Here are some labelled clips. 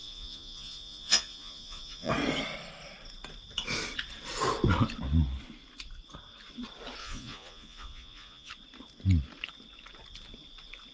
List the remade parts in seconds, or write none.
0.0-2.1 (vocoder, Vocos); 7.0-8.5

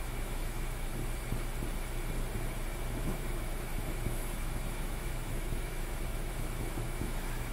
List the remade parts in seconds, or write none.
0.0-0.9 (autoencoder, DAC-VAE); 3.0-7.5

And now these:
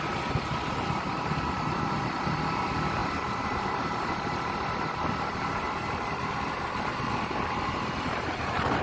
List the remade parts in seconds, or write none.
0.0-8.8 (vocoder, BigVGAN v2)

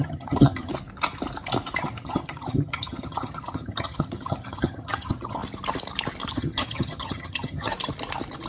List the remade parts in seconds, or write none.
0.0-0.7 (vocoder, HiFi-GAN); 1.8-5.4; 6.3-7.7